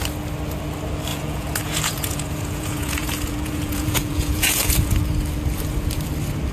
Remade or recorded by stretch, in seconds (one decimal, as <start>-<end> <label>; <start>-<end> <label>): 0.0-1.1 recorded; 1.1-5.0 remade; 5.0-6.5 recorded